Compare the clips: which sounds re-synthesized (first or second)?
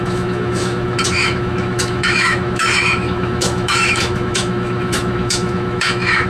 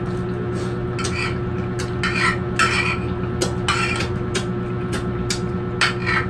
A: first